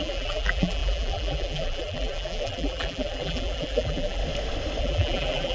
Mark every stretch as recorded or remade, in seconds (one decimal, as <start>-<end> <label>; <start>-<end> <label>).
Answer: 0.0-4.2 remade; 4.2-4.8 recorded; 4.8-5.5 remade